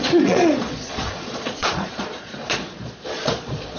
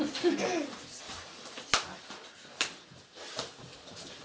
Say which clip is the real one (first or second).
second